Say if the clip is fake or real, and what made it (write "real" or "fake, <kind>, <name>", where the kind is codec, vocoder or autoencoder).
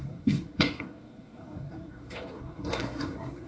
fake, codec, SNAC